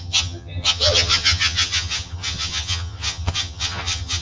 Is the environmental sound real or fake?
fake